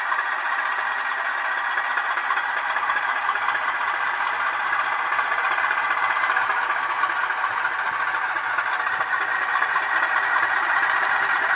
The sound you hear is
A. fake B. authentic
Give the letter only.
B